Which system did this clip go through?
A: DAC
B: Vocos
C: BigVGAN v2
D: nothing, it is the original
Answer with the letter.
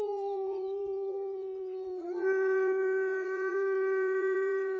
B